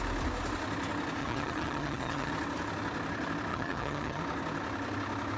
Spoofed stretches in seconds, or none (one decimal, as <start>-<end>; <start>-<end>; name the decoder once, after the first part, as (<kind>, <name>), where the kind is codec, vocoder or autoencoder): 1.2-2.3 (vocoder, HiFi-GAN); 3.5-4.2